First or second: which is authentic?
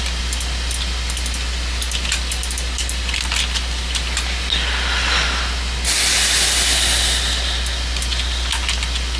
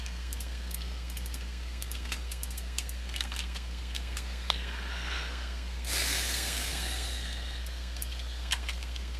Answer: first